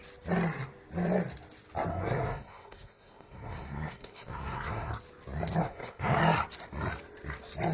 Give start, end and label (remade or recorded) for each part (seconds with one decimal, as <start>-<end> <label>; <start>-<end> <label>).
0.0-1.9 recorded; 1.9-4.9 remade; 4.9-5.6 recorded; 5.6-6.2 remade; 6.2-7.7 recorded